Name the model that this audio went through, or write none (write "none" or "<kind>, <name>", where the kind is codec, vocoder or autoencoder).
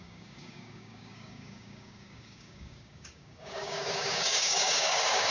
codec, DAC